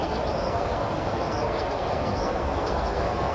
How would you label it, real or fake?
fake